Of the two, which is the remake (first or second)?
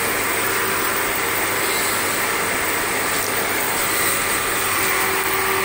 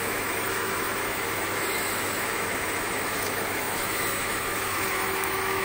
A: second